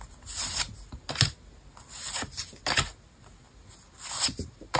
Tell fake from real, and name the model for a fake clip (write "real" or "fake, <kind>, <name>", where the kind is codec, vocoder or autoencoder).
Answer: real